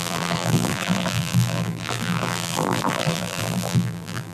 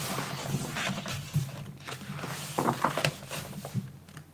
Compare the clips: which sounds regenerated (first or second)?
first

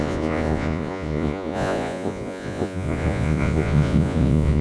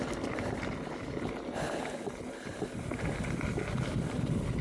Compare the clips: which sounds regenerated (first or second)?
first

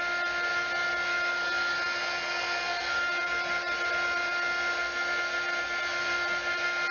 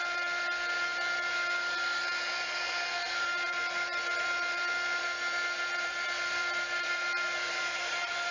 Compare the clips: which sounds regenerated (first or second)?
second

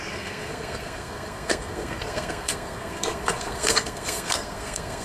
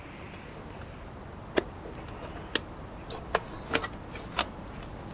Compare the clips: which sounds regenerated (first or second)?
first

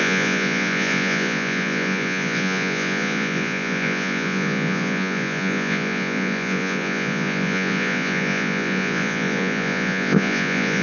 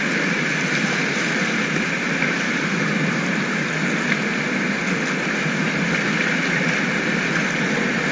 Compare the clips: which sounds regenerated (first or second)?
first